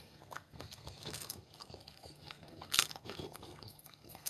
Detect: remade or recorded remade